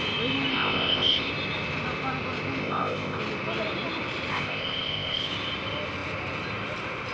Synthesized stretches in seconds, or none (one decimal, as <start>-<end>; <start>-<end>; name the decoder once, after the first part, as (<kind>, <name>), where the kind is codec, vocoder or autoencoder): 0.5-1.3 (codec, ZipCodec); 2.6-3.2; 4.3-5.3